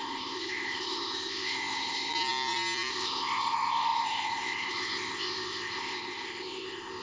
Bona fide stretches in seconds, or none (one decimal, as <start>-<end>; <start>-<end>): 2.1-2.9